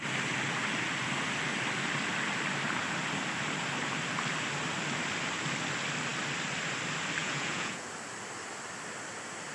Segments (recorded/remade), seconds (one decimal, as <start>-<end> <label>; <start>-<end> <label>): 0.0-7.2 recorded; 7.2-7.9 remade; 7.9-9.5 recorded